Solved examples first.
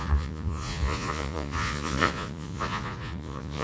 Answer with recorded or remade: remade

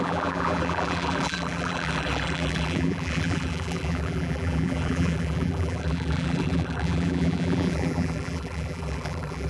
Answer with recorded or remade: remade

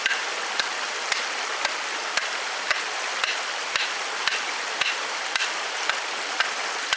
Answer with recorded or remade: recorded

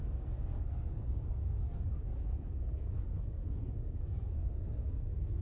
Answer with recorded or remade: remade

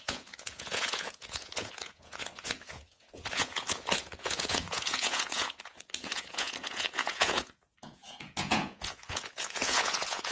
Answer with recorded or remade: remade